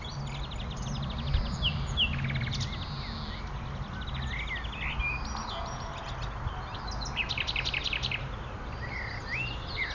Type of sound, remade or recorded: recorded